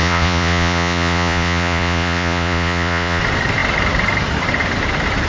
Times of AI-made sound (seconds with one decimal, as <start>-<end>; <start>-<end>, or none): 0.0-3.2